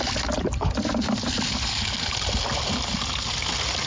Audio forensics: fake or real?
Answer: real